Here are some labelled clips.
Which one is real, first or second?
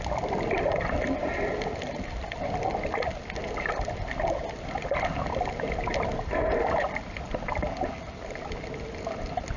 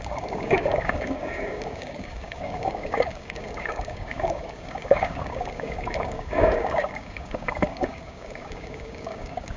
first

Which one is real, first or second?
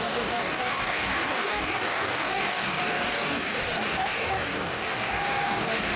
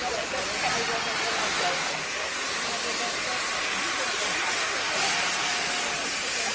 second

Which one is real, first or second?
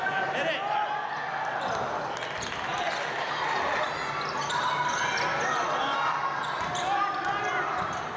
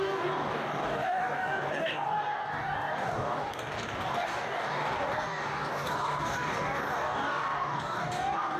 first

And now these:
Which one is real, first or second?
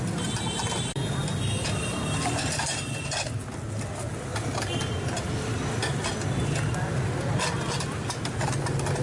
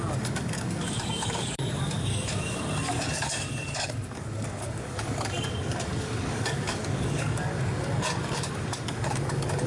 first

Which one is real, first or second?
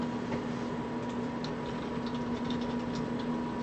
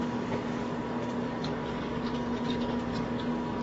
first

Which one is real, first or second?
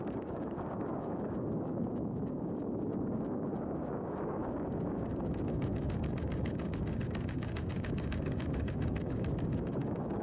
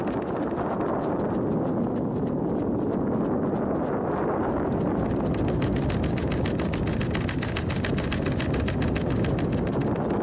second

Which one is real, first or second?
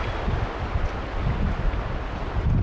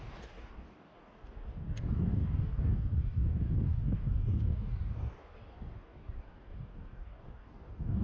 first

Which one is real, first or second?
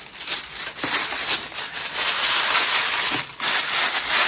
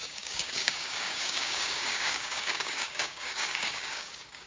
first